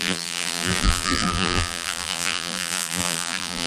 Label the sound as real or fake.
fake